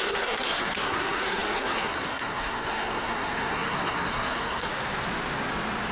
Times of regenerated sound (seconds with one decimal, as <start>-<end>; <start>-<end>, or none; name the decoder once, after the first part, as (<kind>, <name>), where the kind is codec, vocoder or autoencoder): 0.0-4.7 (codec, SNAC)

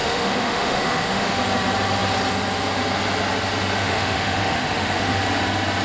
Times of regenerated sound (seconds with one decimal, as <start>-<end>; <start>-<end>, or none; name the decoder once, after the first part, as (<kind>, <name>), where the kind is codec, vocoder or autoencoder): 0.0-1.4 (autoencoder, DAC-VAE); 3.8-5.2

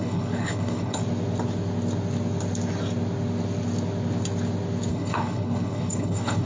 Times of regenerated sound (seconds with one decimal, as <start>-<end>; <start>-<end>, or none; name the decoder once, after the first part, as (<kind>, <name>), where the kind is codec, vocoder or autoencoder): 0.0-1.0 (codec, HILCodec); 4.9-6.5